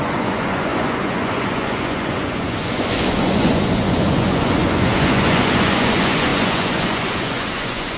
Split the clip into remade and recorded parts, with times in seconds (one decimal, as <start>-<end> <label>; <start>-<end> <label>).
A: 0.0-8.0 remade